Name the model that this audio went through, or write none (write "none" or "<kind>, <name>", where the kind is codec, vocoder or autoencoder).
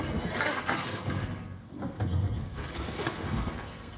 codec, SNAC